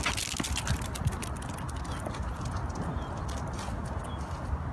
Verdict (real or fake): real